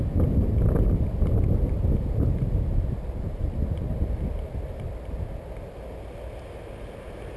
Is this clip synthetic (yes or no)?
no